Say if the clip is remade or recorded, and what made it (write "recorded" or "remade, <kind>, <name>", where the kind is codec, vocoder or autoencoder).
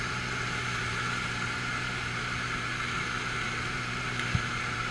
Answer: remade, vocoder, BigVGAN v2